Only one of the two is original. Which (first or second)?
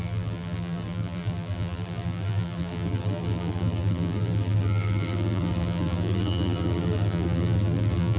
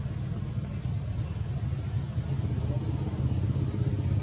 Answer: second